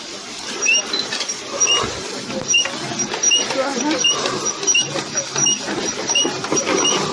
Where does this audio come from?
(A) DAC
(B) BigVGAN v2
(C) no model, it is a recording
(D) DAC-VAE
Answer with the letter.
C